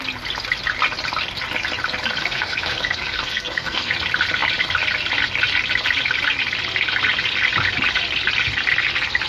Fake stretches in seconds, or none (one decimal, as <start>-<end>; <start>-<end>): 2.2-3.9